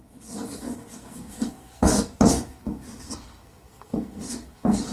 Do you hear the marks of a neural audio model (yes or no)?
yes